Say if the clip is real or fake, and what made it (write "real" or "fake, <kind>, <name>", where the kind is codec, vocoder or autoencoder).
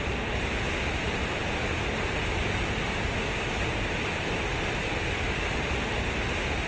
real